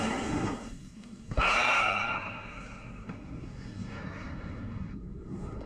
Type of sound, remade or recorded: remade